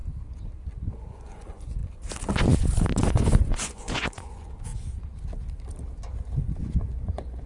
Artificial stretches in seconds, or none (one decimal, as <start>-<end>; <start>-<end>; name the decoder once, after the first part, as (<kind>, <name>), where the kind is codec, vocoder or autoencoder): 0.9-1.8 (vocoder, Vocos); 3.1-4.7; 6.6-7.5